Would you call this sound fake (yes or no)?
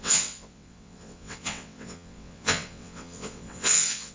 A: yes